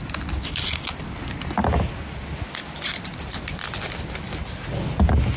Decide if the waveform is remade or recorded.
recorded